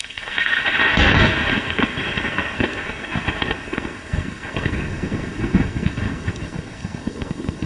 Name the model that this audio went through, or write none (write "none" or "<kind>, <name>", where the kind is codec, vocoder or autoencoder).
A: codec, SNAC